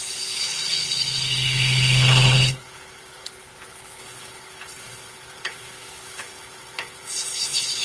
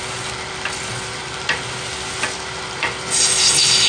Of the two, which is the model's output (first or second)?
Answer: first